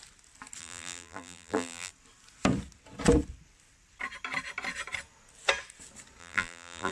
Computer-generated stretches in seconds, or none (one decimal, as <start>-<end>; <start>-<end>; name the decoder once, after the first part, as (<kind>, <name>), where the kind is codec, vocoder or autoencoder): 0.6-1.9 (vocoder, BigVGAN v2); 6.2-6.9